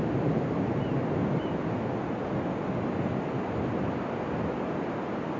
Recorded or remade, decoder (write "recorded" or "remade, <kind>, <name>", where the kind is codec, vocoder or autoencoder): recorded